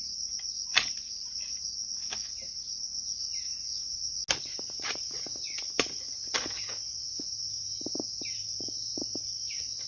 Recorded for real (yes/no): yes